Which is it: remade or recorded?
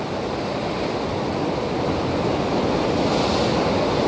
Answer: recorded